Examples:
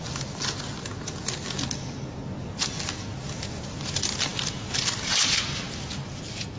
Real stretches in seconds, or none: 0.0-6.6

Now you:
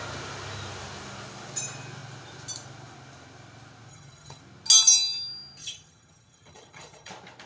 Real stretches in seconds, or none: 0.0-3.9; 4.4-5.6; 7.1-7.5

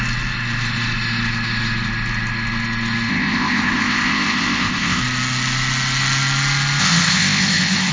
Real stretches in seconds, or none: 0.0-3.1; 5.0-6.8

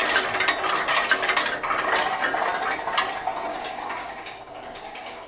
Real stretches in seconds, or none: 0.0-3.5

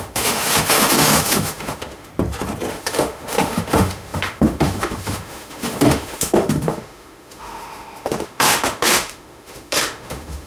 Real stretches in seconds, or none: 2.1-2.7

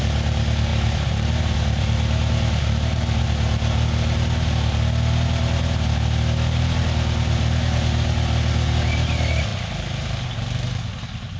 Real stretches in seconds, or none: 0.0-0.7; 3.2-11.4

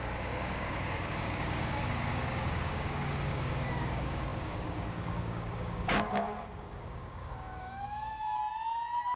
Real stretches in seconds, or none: 8.4-9.2

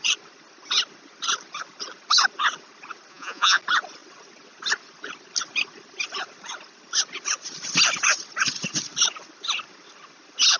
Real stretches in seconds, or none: 0.0-3.1; 3.6-10.6